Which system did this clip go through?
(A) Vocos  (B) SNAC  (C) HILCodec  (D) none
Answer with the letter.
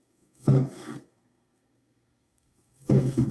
B